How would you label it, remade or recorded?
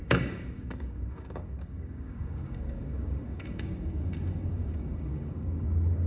remade